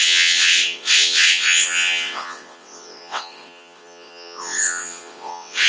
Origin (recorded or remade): remade